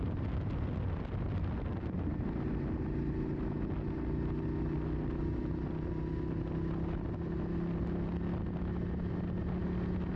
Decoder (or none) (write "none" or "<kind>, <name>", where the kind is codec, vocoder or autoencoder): none